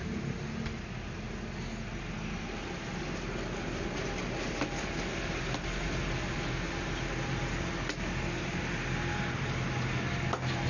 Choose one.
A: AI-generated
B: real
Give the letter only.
B